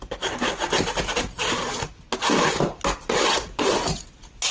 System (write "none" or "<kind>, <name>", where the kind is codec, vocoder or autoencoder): none